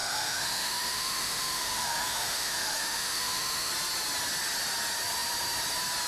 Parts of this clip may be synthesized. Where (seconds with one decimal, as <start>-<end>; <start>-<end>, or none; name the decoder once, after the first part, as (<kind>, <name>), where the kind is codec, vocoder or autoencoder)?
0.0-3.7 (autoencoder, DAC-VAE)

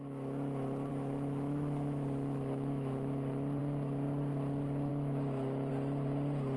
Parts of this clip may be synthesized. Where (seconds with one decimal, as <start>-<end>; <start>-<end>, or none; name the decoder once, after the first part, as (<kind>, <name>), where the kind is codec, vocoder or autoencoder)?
0.9-3.6 (autoencoder, DAC-VAE); 4.9-5.7

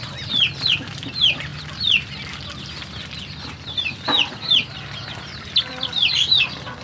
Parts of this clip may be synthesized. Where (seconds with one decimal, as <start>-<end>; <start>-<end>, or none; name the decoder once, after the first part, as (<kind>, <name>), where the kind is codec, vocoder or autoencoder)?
none

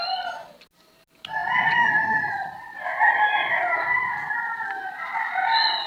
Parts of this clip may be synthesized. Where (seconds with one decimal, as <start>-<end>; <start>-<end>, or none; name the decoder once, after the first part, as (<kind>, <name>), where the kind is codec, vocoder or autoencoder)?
none

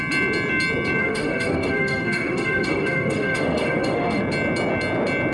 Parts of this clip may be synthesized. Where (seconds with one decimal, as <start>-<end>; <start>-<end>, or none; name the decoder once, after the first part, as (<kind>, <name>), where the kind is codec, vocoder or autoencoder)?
1.0-4.2 (autoencoder, DAC-VAE)